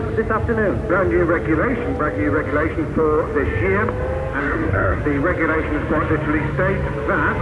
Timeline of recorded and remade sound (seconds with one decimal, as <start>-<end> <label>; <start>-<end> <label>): 0.0-4.4 recorded; 4.4-5.0 remade; 5.0-7.4 recorded